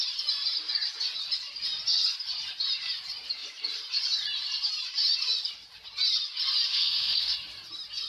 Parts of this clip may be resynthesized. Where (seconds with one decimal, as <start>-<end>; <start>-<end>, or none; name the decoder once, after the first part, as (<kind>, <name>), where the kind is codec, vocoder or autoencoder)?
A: 6.7-7.3 (codec, SNAC)